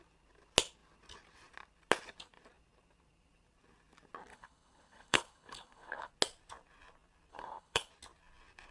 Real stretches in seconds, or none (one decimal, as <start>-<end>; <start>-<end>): 0.0-4.3; 6.1-7.3; 7.9-8.7